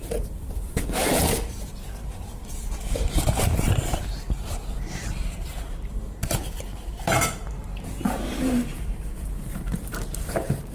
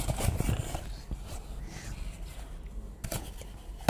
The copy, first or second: first